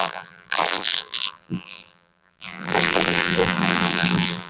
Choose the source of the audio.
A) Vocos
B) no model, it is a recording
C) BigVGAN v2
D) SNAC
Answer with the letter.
C